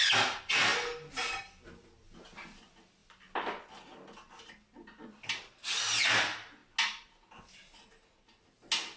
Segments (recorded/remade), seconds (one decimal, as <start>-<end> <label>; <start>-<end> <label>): 0.0-9.0 recorded

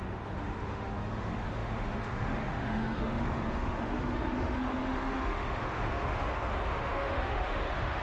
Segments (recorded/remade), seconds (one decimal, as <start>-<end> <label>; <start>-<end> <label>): 0.0-8.0 remade

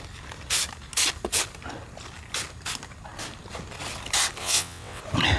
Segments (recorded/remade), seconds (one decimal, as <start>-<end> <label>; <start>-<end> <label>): 0.0-4.4 recorded; 4.4-5.0 remade; 5.0-5.4 recorded

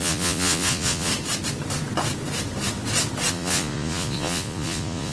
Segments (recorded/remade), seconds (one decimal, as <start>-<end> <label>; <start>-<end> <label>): 0.0-1.1 remade; 1.1-3.3 recorded; 3.3-5.1 remade

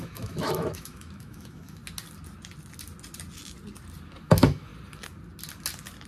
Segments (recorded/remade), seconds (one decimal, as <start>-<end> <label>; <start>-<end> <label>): 0.0-1.8 remade; 1.8-4.2 recorded; 4.2-4.7 remade; 4.7-6.1 recorded